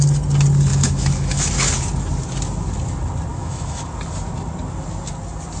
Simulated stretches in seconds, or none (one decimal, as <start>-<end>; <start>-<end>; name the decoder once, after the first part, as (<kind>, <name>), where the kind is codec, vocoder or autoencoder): 0.7-1.5 (autoencoder, DAC-VAE); 3.3-3.8